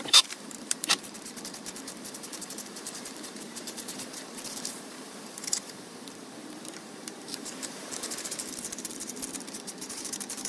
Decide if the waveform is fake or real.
fake